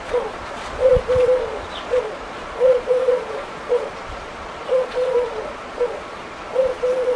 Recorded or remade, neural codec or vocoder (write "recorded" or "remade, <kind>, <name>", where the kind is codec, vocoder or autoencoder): remade, vocoder, Vocos